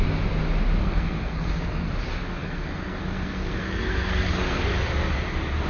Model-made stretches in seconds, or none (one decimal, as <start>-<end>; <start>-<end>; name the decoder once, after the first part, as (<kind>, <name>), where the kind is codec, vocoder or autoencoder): 0.8-1.9 (codec, SNAC); 2.4-4.6